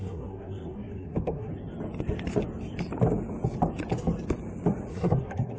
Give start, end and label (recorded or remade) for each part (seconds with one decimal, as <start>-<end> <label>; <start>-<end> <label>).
0.0-1.5 remade; 1.5-4.9 recorded; 4.9-5.6 remade